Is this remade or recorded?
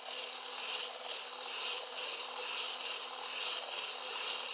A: recorded